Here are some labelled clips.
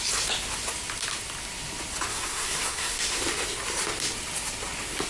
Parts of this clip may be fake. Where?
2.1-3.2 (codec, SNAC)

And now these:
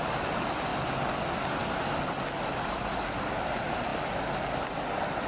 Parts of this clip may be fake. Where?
none

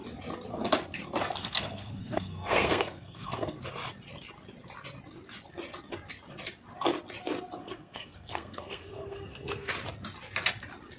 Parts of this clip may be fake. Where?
1.4-3.6 (codec, SNAC); 7.6-9.7

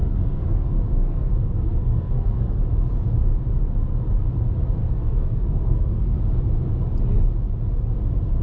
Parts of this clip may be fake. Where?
0.0-2.6 (codec, SNAC); 4.8-6.2